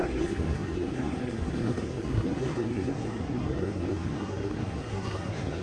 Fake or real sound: fake